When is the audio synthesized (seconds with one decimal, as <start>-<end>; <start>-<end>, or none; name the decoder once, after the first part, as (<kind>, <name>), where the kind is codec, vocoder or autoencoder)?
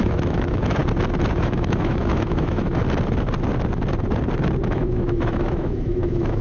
0.0-0.8 (autoencoder, DAC-VAE); 1.3-2.8; 4.6-6.4